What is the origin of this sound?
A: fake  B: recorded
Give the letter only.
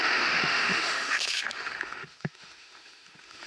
A